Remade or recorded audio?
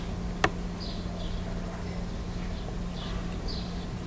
recorded